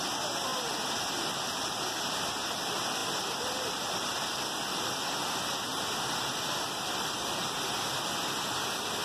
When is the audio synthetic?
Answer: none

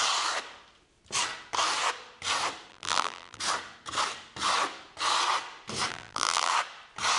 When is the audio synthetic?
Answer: 2.7-3.4 (vocoder, BigVGAN v2); 5.9-6.5

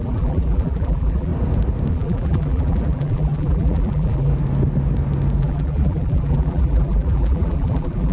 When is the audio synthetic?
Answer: 0.0-1.3 (vocoder, BigVGAN v2); 1.9-4.3; 5.4-8.1